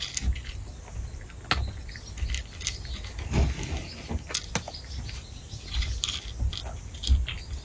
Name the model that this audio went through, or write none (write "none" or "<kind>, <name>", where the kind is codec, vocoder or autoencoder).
none